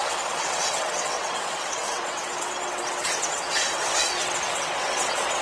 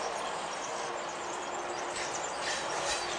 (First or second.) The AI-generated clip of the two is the first